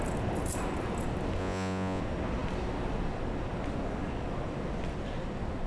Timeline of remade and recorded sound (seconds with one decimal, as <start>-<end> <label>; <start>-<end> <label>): 0.0-1.4 recorded; 1.4-2.0 remade; 2.0-5.7 recorded